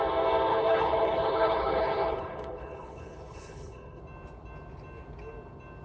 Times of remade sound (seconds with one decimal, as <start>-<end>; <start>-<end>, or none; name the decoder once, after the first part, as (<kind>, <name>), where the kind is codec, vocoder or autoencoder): 0.5-4.0 (codec, HILCodec)